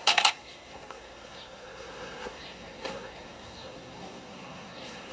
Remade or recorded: remade